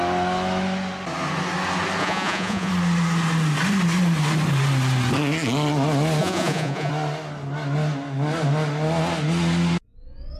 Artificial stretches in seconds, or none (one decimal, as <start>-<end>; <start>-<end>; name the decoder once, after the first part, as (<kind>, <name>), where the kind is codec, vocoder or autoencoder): 2.0-2.7 (vocoder, Vocos); 6.2-6.9